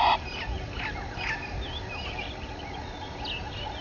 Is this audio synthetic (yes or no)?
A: no